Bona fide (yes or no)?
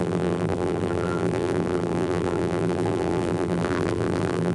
no